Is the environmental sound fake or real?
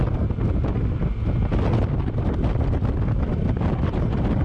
real